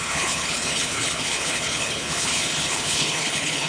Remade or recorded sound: remade